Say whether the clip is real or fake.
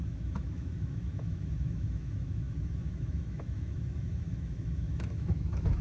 fake